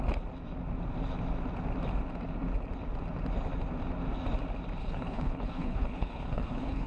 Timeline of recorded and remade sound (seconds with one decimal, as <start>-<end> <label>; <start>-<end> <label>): 0.0-4.8 recorded; 4.8-6.9 remade